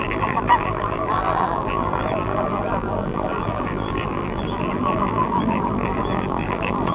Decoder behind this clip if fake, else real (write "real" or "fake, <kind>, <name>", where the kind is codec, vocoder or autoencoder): fake, vocoder, BigVGAN v2